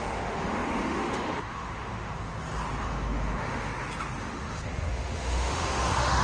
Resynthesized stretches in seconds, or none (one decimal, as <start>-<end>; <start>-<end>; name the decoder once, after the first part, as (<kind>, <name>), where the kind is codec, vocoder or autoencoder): 0.0-2.3 (autoencoder, DAC-VAE); 2.8-3.7; 4.2-6.2